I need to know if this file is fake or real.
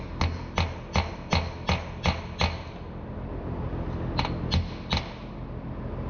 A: real